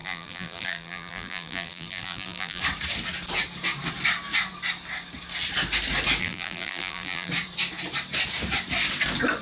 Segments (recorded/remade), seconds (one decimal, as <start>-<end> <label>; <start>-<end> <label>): 0.0-2.6 remade; 2.6-6.2 recorded; 6.2-7.3 remade; 7.3-9.4 recorded